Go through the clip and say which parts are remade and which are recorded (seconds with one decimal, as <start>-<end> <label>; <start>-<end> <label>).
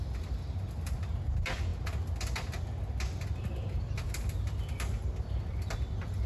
0.0-6.3 recorded